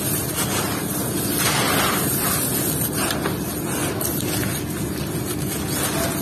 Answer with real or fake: real